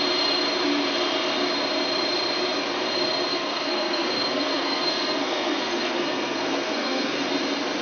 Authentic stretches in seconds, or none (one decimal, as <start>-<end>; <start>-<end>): 0.0-3.3; 7.3-7.8